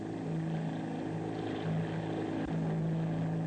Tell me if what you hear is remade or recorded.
recorded